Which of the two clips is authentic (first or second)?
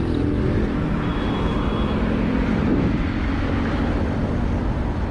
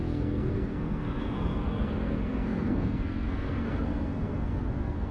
first